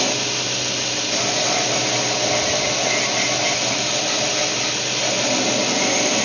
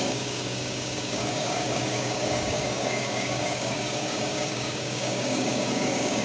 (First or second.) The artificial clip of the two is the second